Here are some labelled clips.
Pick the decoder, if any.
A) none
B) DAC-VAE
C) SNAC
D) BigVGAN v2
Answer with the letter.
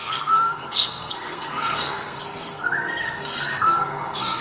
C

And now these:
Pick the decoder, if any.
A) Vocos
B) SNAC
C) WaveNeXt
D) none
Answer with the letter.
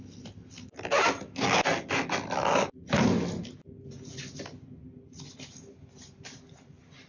D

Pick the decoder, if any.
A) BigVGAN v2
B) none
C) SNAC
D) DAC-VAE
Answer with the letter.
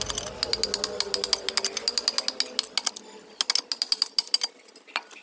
B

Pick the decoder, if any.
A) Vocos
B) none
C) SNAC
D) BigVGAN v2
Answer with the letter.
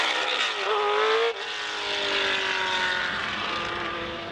B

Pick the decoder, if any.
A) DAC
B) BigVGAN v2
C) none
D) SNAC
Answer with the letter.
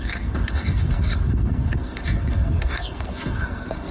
D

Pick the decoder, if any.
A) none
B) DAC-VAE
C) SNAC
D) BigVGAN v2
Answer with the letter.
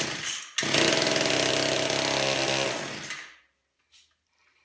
A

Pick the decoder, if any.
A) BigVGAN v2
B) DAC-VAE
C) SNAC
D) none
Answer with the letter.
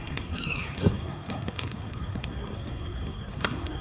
C